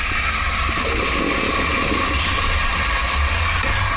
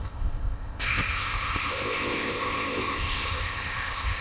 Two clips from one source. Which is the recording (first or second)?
first